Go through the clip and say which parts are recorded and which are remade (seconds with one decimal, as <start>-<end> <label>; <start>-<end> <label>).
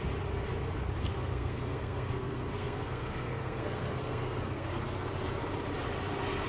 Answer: 0.0-1.1 recorded; 1.1-4.7 remade; 4.7-6.5 recorded